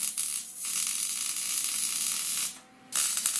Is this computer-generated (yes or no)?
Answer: no